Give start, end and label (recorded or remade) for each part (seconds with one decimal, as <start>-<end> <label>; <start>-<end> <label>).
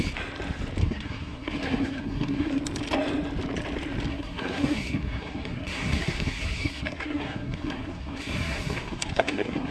0.0-0.8 recorded; 0.8-2.5 remade; 2.5-4.1 recorded; 4.1-9.7 remade